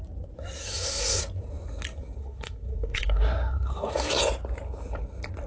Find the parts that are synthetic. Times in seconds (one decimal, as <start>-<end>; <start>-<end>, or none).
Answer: 0.6-1.2; 2.2-4.2